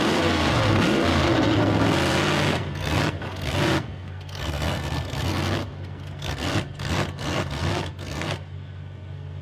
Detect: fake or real fake